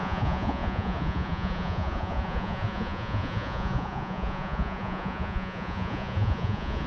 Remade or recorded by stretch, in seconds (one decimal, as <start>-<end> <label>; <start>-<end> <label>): 0.0-6.9 remade